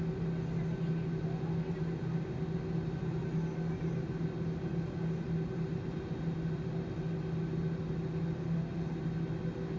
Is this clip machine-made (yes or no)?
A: no